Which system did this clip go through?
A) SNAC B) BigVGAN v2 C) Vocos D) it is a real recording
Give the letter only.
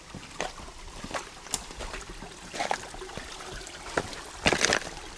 D